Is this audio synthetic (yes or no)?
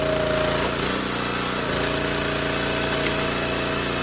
no